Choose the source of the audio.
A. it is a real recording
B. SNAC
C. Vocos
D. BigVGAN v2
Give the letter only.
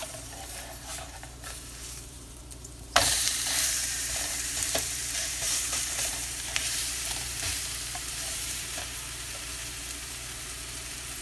D